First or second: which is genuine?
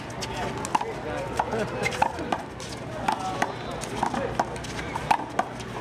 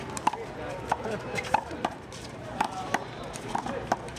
first